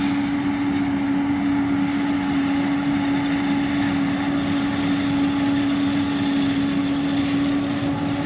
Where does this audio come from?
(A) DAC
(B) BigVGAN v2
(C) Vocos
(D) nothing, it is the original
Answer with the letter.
D